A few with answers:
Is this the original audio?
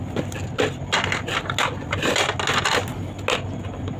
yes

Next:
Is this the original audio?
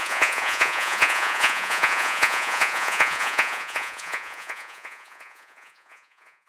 no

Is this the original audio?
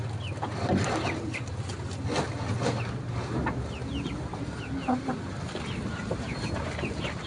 yes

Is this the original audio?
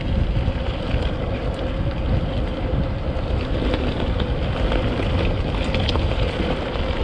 yes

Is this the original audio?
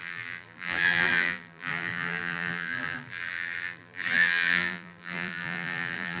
no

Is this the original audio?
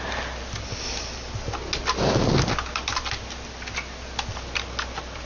yes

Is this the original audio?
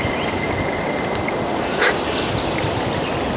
yes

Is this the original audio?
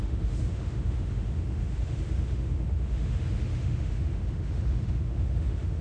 no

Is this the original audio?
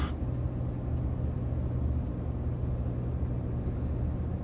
yes